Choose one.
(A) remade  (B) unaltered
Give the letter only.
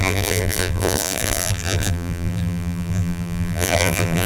A